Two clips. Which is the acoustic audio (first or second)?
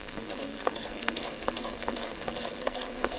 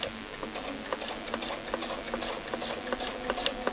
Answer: second